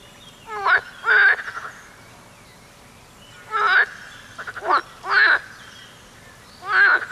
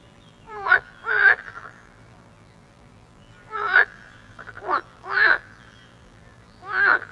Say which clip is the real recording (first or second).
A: first